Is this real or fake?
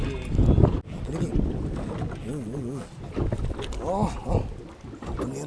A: real